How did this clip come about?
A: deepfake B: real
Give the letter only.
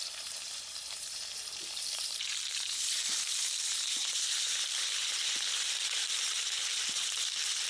A